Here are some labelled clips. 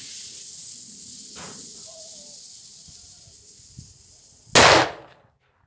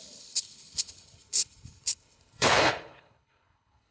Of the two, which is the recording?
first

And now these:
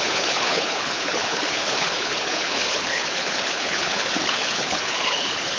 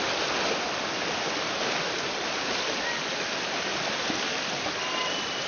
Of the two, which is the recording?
second